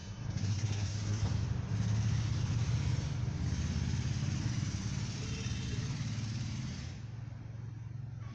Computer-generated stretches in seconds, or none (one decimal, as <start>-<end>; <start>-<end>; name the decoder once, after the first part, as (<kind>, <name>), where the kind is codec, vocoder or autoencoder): 0.0-1.3 (codec, SNAC)